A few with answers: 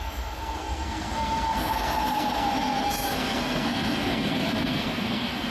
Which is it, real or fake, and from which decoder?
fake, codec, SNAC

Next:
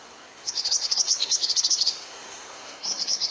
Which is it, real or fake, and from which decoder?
fake, codec, SNAC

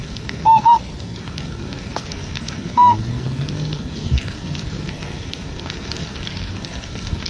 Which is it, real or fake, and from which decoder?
fake, codec, SNAC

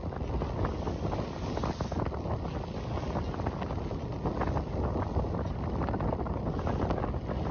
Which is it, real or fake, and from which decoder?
real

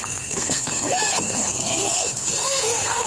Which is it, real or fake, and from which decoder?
fake, codec, SNAC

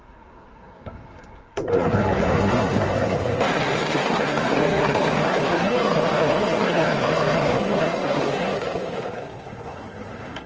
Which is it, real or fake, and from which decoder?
fake, codec, SNAC